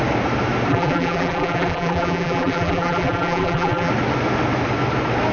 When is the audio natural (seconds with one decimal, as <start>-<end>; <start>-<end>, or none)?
0.0-0.7; 3.9-5.3